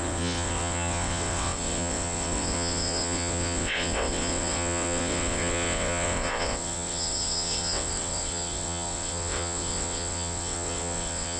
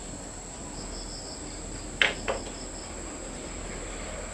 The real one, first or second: second